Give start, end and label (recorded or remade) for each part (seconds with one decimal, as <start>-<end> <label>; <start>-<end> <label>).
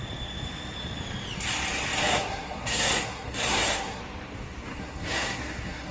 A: 0.0-2.1 recorded; 2.1-4.0 remade; 4.0-4.7 recorded; 4.7-5.9 remade